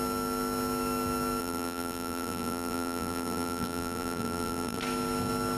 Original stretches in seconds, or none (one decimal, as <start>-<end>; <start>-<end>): 0.0-1.4; 4.8-5.6

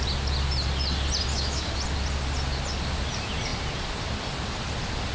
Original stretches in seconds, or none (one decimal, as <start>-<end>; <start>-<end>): 0.0-1.3; 1.8-5.1

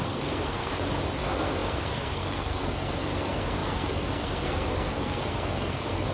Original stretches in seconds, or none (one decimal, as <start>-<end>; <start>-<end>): 0.7-1.2

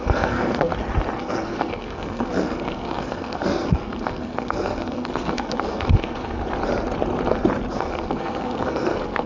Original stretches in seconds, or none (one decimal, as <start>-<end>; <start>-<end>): 0.7-1.2; 6.4-7.7

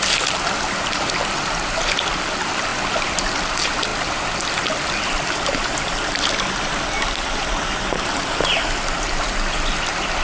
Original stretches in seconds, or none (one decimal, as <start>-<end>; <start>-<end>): 0.0-10.2

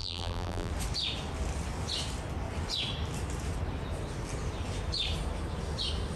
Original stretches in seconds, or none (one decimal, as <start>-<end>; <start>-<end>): 0.7-6.2

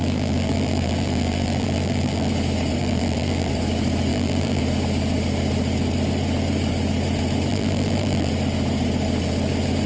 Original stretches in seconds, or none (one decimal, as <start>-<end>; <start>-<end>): 2.3-2.8; 3.5-4.1; 4.6-7.5; 8.3-9.9